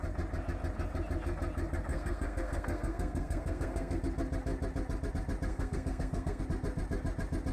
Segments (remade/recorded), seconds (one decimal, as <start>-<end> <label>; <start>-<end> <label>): 0.0-1.9 recorded; 1.9-4.0 remade; 4.0-5.5 recorded; 5.5-6.4 remade; 6.4-7.5 recorded